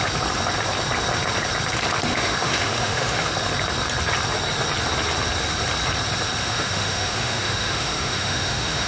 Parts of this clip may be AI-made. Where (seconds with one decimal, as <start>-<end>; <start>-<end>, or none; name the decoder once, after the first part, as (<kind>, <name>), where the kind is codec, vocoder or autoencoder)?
2.1-3.3 (autoencoder, DAC-VAE); 6.4-8.9